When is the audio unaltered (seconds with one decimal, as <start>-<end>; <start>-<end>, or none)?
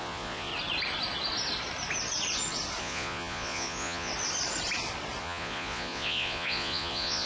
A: 0.5-2.8; 4.1-5.2